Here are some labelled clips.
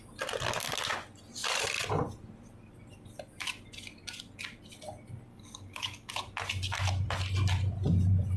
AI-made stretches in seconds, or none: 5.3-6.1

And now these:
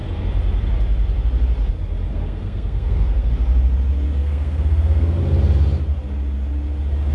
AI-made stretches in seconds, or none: 2.1-3.3; 4.2-5.2

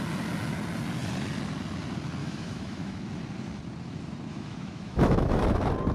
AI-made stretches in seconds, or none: 2.2-3.0; 4.3-5.4

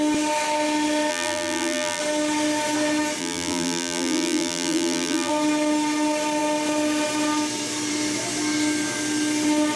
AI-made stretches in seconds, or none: 1.1-2.0; 3.2-5.3

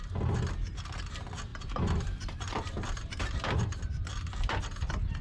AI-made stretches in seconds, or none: 1.5-4.6

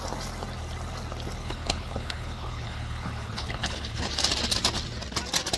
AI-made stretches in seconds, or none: 1.4-4.1

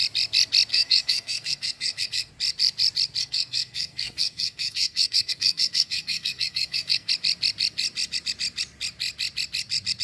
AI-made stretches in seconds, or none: 0.7-2.3; 3.2-7.1